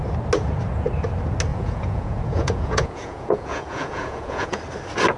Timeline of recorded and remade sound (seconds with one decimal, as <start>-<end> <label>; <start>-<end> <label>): 0.0-1.5 recorded; 1.5-4.6 remade; 4.6-5.2 recorded